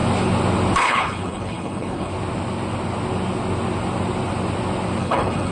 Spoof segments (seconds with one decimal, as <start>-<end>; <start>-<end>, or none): 0.8-2.1; 5.0-5.5